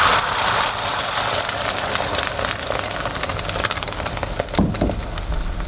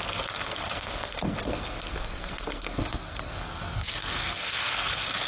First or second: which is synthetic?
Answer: second